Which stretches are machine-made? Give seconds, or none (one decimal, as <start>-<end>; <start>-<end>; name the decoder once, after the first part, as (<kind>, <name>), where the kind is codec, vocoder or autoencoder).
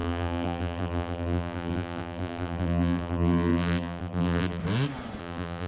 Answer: 0.0-4.6 (vocoder, BigVGAN v2); 5.2-5.7